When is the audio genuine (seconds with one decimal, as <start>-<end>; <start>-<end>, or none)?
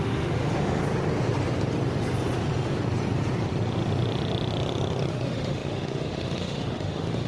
0.8-5.1